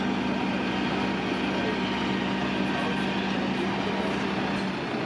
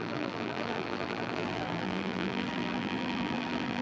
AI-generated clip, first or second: second